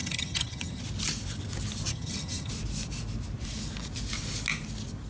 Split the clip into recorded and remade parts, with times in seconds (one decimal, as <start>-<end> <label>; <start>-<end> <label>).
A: 0.0-0.8 remade; 0.8-1.9 recorded; 1.9-2.5 remade; 2.5-5.1 recorded